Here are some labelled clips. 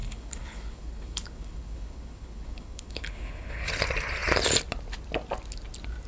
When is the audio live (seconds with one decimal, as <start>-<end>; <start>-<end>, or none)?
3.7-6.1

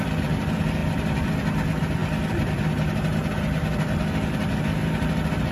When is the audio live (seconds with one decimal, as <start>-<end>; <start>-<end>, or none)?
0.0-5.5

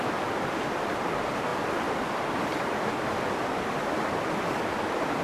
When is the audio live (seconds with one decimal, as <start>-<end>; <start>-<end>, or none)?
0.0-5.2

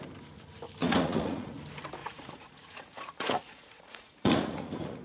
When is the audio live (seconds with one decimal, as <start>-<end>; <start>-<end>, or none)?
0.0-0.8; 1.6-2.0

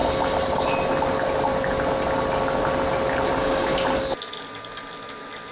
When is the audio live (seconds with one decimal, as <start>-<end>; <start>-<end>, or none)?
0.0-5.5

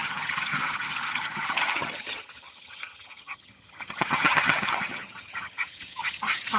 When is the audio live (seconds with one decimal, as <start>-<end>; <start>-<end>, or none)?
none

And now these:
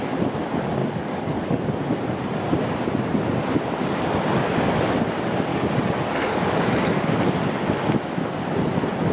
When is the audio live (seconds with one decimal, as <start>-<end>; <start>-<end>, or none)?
0.0-0.8; 1.6-5.5; 6.7-9.1

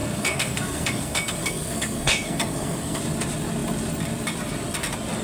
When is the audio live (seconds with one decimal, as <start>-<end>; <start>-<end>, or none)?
3.0-5.2